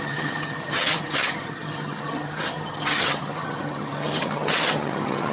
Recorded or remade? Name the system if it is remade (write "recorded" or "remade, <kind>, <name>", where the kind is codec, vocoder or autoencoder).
remade, vocoder, HiFi-GAN